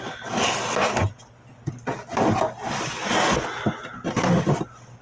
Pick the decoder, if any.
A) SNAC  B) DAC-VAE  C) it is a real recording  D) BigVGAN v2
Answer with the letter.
C